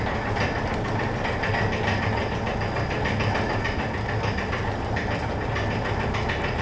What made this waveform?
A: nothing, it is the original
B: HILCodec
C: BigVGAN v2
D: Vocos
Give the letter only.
A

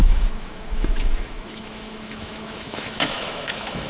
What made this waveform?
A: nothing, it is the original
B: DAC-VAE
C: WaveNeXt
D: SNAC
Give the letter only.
B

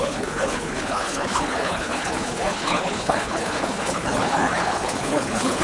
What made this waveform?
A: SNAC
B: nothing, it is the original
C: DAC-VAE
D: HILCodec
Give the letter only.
D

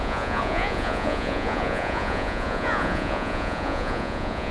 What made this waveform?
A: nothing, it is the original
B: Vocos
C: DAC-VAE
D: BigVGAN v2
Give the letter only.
B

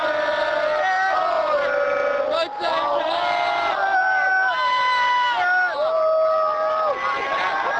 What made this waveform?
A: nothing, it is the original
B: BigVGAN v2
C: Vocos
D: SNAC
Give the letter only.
A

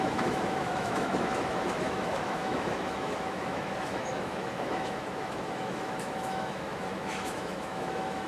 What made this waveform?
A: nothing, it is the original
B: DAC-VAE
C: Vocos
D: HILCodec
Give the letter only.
B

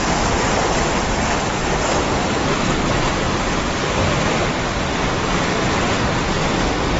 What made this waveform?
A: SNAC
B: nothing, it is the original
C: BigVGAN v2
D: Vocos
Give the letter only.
B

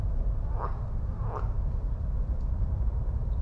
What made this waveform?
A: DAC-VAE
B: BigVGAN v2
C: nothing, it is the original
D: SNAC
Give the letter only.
C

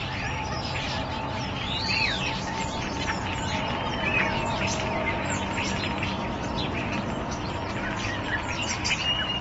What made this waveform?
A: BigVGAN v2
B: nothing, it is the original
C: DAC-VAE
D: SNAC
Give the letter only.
B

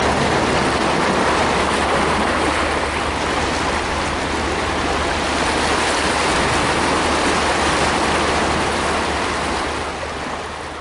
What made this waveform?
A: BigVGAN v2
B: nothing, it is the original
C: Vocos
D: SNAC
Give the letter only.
B